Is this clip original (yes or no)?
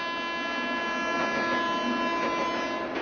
yes